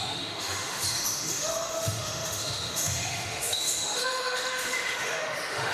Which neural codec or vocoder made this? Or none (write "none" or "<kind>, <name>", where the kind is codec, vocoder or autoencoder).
autoencoder, DAC-VAE